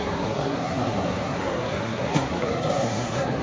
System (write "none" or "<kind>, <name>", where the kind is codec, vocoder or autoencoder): codec, SNAC